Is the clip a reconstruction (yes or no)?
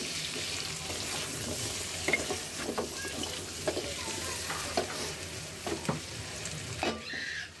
yes